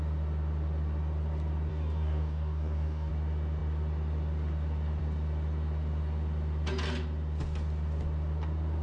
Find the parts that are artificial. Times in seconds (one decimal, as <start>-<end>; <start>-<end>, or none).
1.7-3.1